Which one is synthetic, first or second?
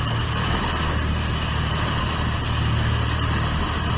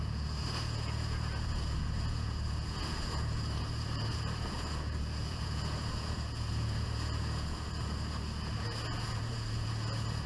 second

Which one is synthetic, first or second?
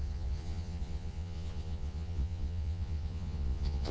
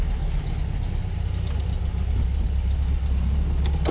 first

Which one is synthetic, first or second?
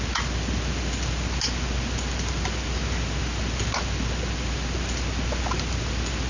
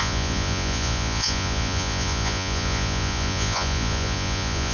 second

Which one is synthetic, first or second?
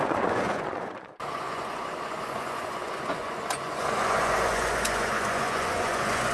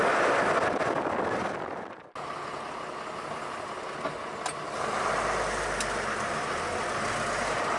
first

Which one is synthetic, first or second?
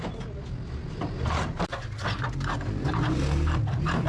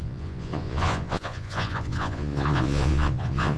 second